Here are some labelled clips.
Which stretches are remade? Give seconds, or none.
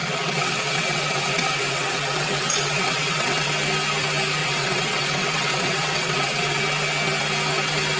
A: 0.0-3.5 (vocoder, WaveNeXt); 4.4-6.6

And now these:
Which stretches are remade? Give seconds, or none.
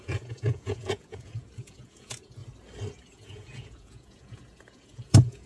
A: 0.0-2.4 (vocoder, Vocos); 2.9-5.5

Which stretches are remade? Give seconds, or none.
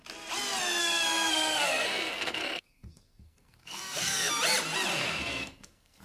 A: 0.8-4.3 (codec, SNAC); 4.9-6.0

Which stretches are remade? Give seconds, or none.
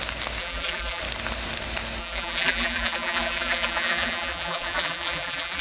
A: 0.4-1.0 (vocoder, BigVGAN v2); 2.0-5.6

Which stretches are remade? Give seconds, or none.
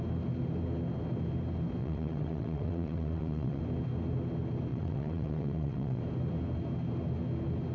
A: 1.8-3.6 (vocoder, WaveNeXt); 4.7-6.0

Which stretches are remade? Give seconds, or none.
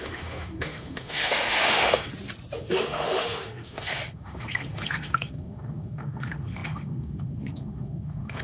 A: 0.0-2.1 (autoencoder, DAC-VAE); 2.6-8.4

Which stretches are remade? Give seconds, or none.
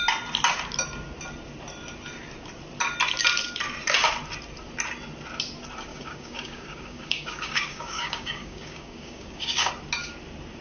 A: 5.9-9.7 (codec, DAC)